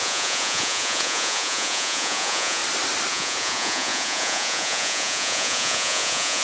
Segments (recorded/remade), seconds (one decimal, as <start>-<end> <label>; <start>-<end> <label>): 0.0-2.6 remade; 2.6-3.1 recorded; 3.1-6.4 remade